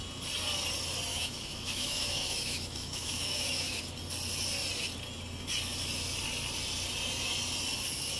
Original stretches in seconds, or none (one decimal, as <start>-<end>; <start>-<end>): 0.0-1.1; 3.8-8.2